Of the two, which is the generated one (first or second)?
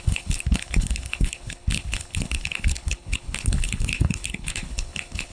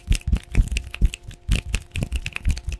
first